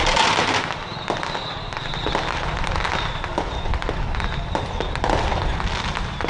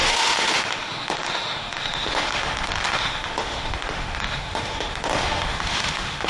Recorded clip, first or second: first